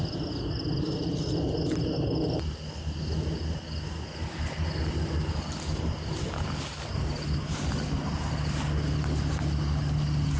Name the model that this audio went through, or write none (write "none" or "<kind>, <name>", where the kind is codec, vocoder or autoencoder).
none